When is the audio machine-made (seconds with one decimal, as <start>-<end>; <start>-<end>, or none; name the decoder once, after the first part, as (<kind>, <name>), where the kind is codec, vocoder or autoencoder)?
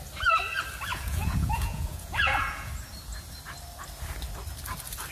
0.9-2.7 (vocoder, Vocos)